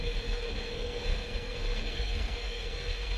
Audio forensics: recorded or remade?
remade